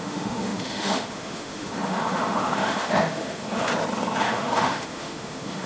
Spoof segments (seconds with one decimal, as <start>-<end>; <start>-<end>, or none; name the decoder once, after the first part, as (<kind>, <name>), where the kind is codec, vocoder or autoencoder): 0.0-3.7 (autoencoder, DAC-VAE); 4.2-5.7